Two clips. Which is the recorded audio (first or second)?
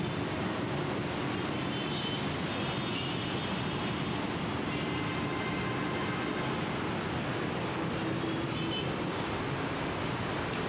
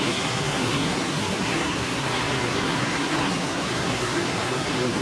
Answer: first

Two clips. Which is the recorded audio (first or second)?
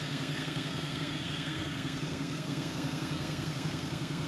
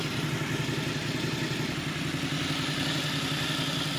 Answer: second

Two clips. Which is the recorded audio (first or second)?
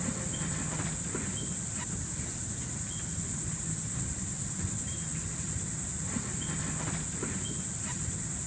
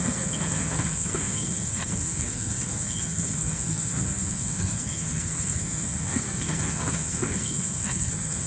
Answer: first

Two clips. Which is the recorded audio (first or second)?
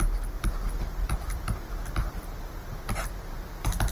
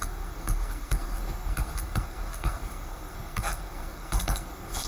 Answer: first